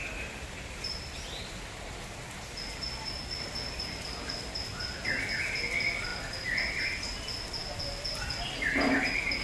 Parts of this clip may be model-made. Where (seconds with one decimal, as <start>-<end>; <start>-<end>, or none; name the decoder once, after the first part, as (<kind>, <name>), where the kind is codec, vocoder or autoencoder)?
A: none